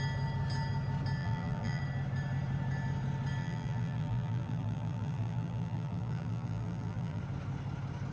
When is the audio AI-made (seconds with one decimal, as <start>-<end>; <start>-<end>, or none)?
1.2-1.8; 3.4-7.2